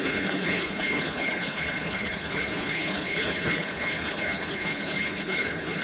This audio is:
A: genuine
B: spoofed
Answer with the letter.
B